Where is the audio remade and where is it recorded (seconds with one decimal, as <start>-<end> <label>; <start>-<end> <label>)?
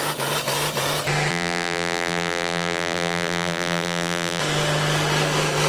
0.0-1.3 recorded; 1.3-4.4 remade; 4.4-5.7 recorded